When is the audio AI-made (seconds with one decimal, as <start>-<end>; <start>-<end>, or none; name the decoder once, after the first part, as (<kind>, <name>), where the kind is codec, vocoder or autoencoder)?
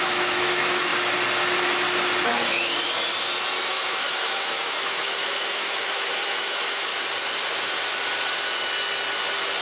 0.0-0.9 (autoencoder, DAC-VAE); 3.7-6.9